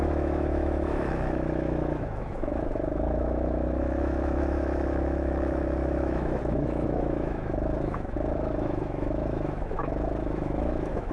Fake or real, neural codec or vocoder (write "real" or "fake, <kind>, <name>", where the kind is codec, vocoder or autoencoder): fake, autoencoder, DAC-VAE